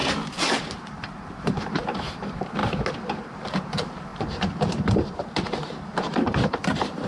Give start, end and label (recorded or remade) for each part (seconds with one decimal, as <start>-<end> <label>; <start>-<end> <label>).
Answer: 0.0-2.6 remade; 2.6-3.2 recorded; 3.2-7.1 remade